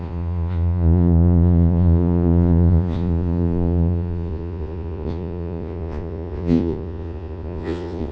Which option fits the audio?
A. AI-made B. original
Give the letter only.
A